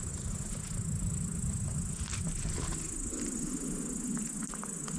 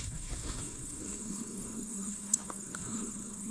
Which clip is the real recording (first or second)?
first